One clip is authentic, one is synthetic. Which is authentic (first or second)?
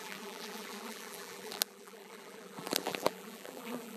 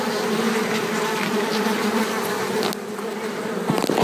second